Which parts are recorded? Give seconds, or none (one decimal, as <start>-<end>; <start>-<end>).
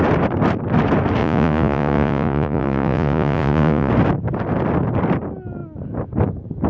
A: 0.0-1.2; 3.9-6.7